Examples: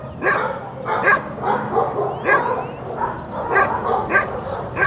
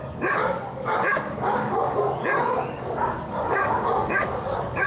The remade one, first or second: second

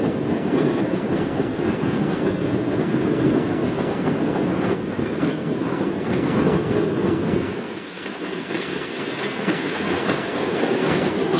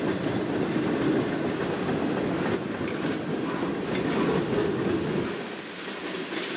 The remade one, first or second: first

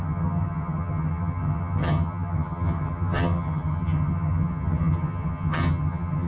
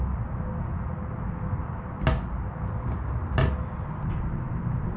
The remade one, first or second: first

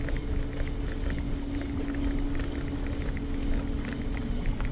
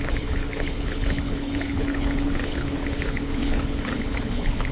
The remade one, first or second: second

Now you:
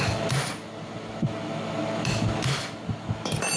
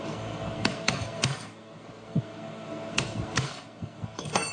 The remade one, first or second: second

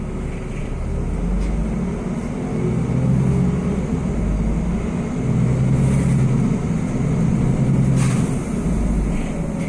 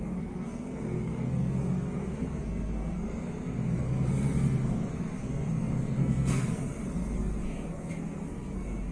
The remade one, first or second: second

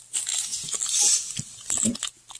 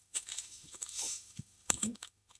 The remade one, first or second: second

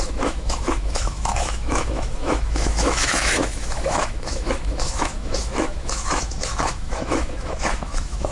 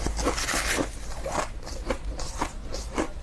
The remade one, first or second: first